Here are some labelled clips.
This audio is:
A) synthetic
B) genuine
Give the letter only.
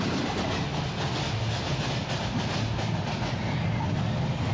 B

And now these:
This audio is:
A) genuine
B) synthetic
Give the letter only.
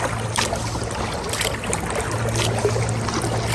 A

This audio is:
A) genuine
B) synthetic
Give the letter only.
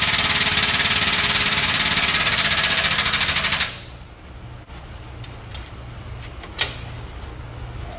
A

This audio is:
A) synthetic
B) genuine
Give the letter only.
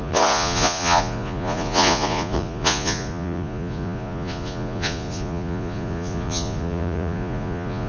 A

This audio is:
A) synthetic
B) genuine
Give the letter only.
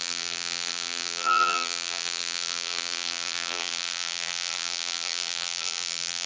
A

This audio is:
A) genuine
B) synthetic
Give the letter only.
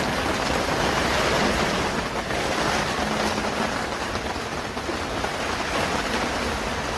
A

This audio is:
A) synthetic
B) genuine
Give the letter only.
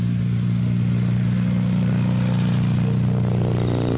B